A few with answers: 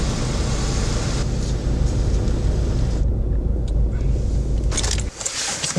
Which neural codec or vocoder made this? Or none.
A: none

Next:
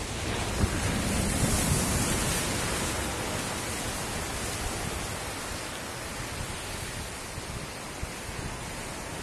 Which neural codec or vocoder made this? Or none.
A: none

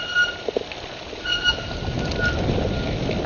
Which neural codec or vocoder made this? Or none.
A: none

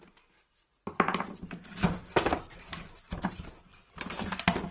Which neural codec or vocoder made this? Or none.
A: none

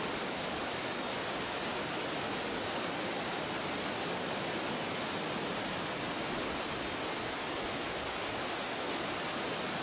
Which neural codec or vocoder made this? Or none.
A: none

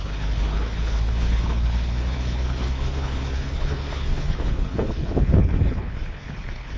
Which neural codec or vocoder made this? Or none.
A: codec, HILCodec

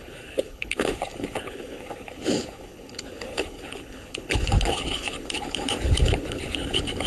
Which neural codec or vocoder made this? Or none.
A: codec, HILCodec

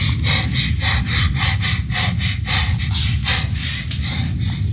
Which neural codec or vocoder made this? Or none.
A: none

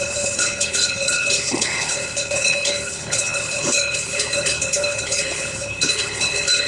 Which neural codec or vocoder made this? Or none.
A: codec, HILCodec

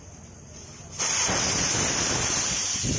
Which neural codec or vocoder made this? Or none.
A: none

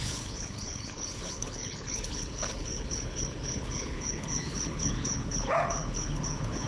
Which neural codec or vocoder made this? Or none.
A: codec, HILCodec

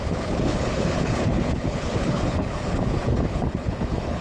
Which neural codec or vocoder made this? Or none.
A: codec, HILCodec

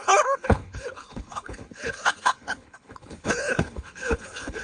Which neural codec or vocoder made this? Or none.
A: codec, HILCodec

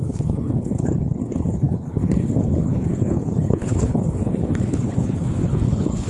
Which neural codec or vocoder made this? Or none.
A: codec, HILCodec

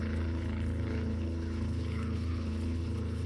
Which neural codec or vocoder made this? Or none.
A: codec, HILCodec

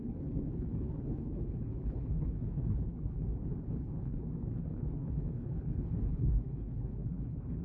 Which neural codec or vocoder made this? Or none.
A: codec, HILCodec